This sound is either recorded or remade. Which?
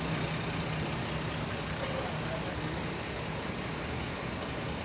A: recorded